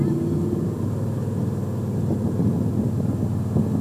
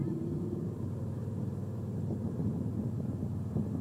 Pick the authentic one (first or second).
first